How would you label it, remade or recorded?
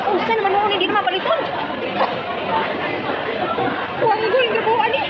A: recorded